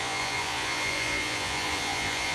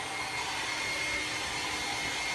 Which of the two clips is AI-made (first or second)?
first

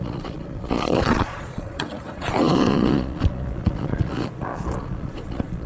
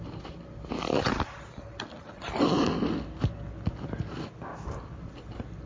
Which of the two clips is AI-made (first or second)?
first